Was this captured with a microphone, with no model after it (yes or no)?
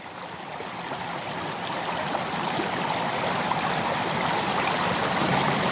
yes